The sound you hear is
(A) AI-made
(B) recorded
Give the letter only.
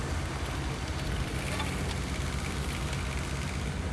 B